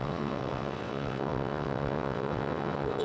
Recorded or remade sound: remade